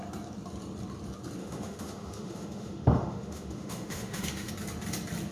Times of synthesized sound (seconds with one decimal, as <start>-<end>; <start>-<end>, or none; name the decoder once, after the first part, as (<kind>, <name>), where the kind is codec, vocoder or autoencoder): 1.4-4.5 (autoencoder, DAC-VAE)